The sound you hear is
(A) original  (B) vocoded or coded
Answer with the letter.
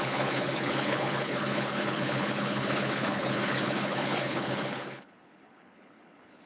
B